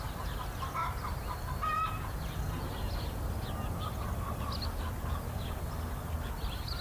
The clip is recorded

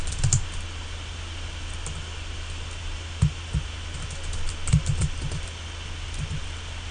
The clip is recorded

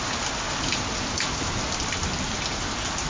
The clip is recorded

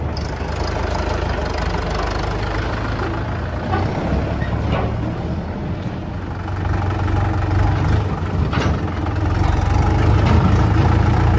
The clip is recorded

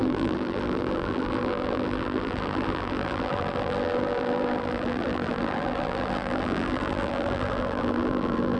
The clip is remade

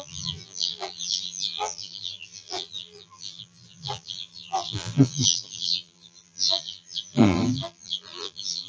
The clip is remade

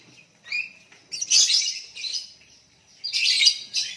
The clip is remade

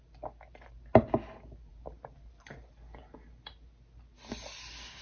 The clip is recorded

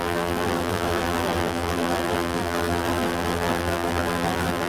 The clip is remade